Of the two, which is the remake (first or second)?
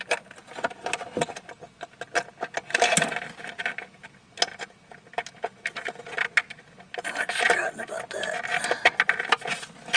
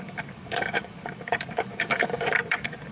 second